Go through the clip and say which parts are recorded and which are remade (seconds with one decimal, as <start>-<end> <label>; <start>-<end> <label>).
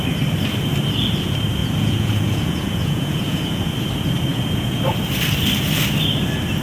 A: 0.0-1.6 recorded; 1.6-3.7 remade; 3.7-4.3 recorded; 4.3-4.8 remade; 4.8-6.6 recorded